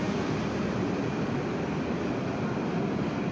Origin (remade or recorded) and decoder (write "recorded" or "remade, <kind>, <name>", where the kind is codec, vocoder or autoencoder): recorded